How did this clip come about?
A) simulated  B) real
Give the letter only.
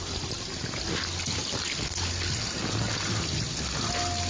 B